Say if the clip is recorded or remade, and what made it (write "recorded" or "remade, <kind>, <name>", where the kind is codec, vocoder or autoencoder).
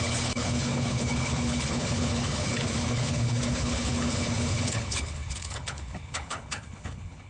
remade, codec, HILCodec